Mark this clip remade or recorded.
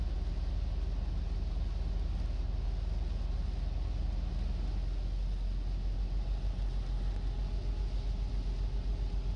recorded